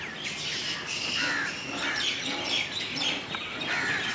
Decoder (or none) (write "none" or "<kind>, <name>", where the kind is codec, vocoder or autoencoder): none